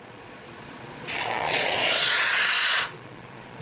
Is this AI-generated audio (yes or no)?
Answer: yes